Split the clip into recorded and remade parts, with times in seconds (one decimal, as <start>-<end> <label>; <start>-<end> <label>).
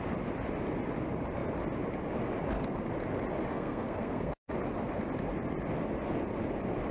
0.0-3.5 recorded; 3.5-4.5 remade; 4.5-6.9 recorded